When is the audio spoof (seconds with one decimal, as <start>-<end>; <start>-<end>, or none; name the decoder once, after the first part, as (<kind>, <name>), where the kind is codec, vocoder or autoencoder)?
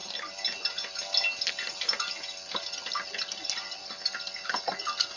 none